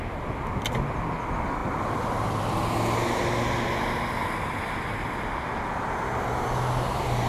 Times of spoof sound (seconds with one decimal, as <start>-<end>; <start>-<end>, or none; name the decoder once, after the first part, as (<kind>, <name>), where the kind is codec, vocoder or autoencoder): none